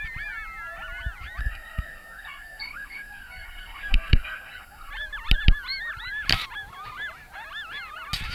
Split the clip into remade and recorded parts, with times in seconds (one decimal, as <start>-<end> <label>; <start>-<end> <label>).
0.0-1.4 recorded; 1.4-4.9 remade; 4.9-8.3 recorded